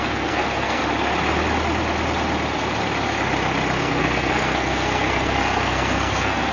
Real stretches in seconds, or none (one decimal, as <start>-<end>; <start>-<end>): 0.8-3.8